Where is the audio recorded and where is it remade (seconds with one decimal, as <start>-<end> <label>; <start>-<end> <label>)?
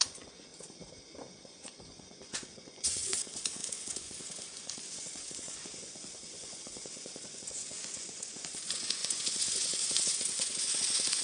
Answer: 0.0-0.5 remade; 0.5-1.0 recorded; 1.0-11.2 remade